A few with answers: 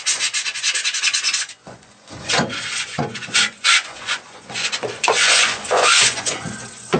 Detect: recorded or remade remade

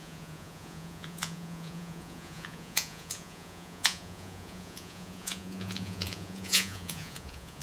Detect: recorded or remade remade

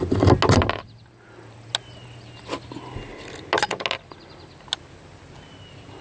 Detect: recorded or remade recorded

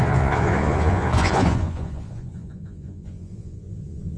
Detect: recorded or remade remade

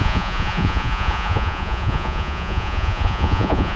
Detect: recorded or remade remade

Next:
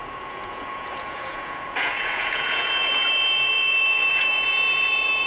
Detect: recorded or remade remade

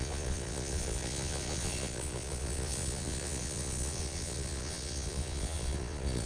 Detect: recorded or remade remade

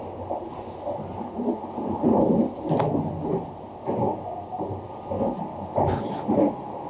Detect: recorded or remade recorded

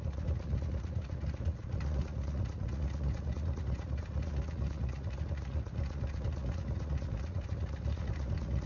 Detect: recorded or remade remade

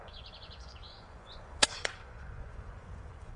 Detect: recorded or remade remade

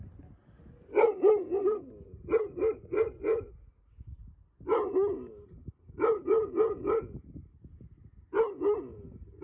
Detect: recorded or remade recorded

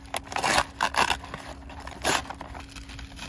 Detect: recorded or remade recorded